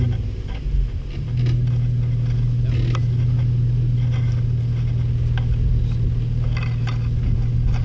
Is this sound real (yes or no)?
yes